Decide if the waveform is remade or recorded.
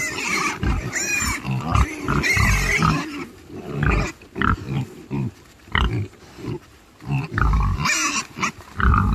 recorded